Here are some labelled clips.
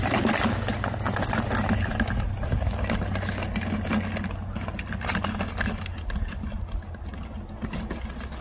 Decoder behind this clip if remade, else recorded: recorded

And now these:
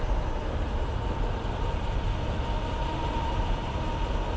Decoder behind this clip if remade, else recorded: recorded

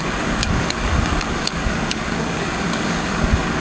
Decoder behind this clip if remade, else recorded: remade, codec, DAC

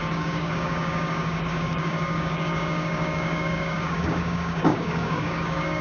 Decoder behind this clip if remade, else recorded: remade, codec, DAC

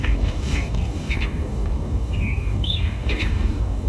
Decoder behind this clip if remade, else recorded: remade, codec, DAC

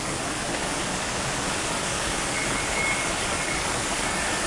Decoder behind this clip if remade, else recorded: remade, codec, DAC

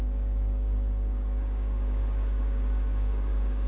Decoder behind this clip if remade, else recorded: remade, codec, DAC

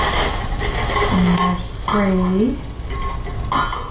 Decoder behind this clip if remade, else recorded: recorded